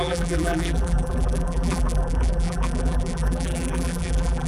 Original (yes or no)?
no